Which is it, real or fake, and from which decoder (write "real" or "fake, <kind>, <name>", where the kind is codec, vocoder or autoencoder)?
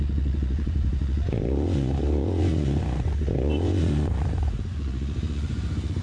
fake, vocoder, Vocos